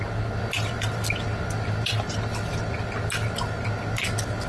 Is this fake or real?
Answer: real